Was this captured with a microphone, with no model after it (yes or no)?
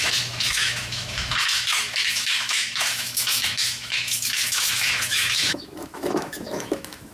no